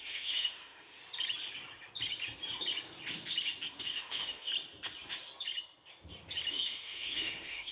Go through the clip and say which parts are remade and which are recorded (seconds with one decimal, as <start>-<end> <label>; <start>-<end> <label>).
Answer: 0.0-1.0 remade; 1.0-3.8 recorded; 3.8-4.5 remade; 4.5-6.5 recorded; 6.5-7.7 remade